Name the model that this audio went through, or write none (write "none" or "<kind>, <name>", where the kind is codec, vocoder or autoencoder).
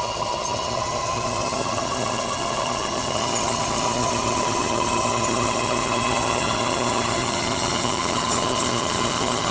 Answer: vocoder, HiFi-GAN